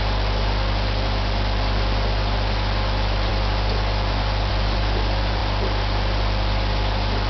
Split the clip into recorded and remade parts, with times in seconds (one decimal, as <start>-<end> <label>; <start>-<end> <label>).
0.0-7.3 recorded